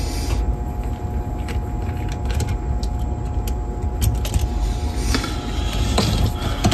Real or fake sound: real